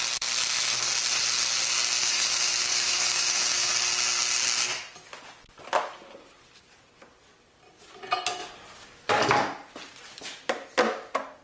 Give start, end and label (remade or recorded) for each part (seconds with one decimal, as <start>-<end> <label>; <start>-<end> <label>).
0.0-2.0 recorded; 2.0-3.7 remade; 3.7-11.4 recorded